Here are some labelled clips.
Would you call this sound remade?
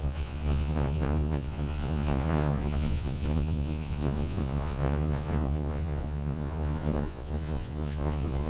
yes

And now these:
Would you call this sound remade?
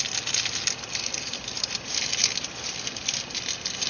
no